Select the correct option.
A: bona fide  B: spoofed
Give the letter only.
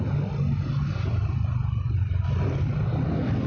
A